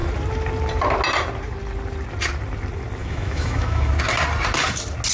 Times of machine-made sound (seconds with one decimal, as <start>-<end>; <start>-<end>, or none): 3.0-3.9

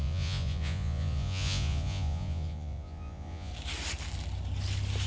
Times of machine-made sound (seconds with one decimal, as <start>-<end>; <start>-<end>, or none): 0.0-3.5

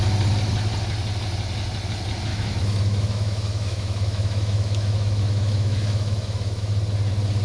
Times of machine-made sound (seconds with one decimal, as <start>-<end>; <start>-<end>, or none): 2.3-6.7

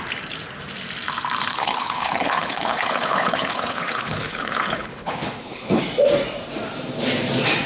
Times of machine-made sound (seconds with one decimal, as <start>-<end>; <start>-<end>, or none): 1.5-5.8

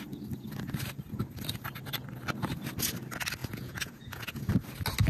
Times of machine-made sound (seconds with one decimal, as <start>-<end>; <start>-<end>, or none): 3.4-4.5

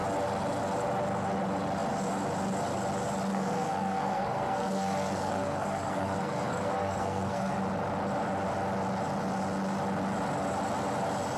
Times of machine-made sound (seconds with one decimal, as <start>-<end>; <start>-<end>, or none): 3.3-7.6

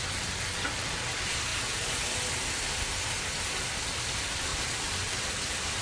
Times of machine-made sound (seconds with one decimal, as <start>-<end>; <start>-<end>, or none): none